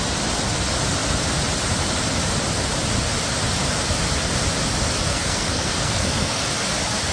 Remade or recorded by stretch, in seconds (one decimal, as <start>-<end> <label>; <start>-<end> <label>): 0.0-5.1 recorded; 5.1-6.4 remade; 6.4-7.1 recorded